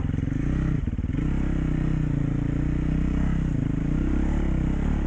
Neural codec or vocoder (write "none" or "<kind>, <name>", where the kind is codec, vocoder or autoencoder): none